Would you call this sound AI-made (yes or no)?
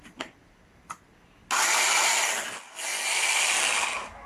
no